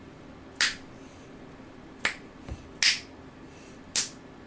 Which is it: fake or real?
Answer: real